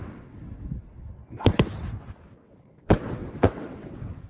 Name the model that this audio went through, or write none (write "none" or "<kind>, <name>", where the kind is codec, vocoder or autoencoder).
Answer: vocoder, WaveNeXt